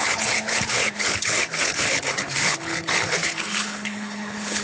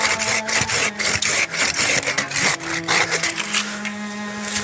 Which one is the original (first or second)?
second